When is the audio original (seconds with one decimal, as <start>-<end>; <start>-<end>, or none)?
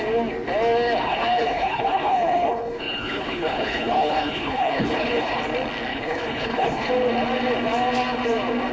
0.0-1.1; 5.4-5.9; 6.9-8.7